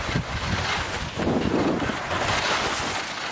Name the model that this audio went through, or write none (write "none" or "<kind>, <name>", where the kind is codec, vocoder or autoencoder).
vocoder, Vocos